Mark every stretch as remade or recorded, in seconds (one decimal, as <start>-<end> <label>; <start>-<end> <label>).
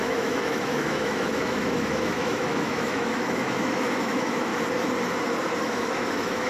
0.0-4.5 remade; 4.5-5.6 recorded; 5.6-6.5 remade